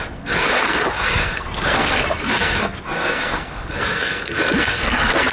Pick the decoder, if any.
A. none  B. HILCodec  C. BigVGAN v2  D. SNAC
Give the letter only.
D